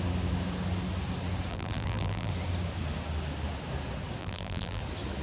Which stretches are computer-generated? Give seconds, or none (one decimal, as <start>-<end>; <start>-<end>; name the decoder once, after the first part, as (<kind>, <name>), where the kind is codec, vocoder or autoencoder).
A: 1.5-2.3 (vocoder, BigVGAN v2); 4.2-4.8